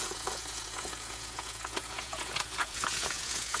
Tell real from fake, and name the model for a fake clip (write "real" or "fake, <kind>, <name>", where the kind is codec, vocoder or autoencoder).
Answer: fake, vocoder, Vocos